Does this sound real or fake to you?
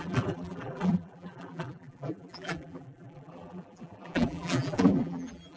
fake